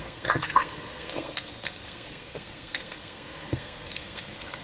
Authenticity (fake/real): fake